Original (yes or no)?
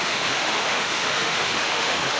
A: no